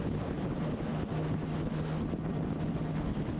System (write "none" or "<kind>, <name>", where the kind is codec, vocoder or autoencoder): none